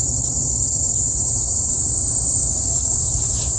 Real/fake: fake